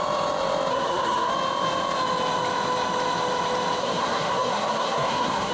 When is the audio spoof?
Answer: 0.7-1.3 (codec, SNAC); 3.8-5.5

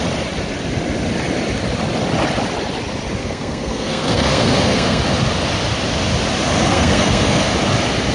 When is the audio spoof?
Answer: 3.2-5.0 (codec, SNAC); 6.7-7.5

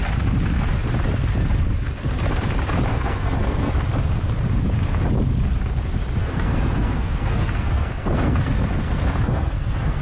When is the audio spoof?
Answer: 2.9-3.7 (codec, SNAC); 6.2-10.0

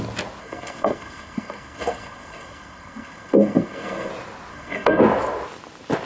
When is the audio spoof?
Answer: 0.4-4.1 (codec, SNAC); 4.5-5.0

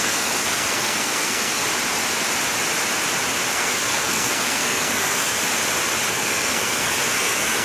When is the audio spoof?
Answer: 0.0-1.6 (codec, SNAC); 3.5-5.4; 6.1-7.6

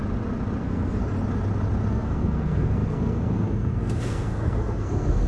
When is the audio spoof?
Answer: 0.6-1.0 (codec, SNAC); 1.9-5.3